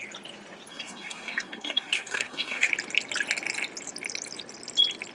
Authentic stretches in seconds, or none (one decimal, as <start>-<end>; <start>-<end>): 0.0-0.7; 2.7-5.1